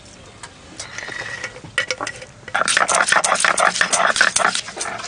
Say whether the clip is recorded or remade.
recorded